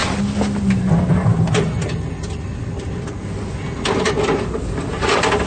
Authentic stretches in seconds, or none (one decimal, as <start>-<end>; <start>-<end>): 0.0-5.5